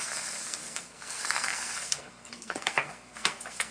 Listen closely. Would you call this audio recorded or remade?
remade